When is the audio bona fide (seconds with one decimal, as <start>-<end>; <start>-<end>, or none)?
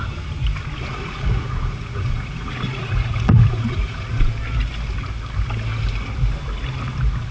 0.0-0.9; 4.3-7.3